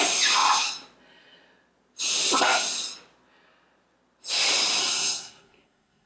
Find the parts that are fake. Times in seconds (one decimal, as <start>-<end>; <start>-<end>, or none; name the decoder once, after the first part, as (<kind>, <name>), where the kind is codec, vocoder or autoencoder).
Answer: 4.8-6.1 (codec, SNAC)